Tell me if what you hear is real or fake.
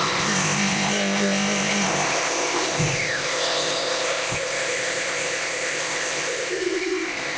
fake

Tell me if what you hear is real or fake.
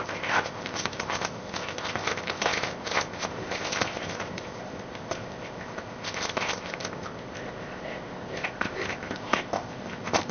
fake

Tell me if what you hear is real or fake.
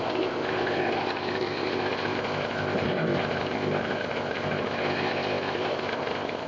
fake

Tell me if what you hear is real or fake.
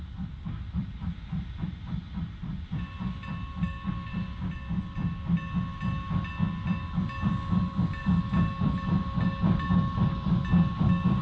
real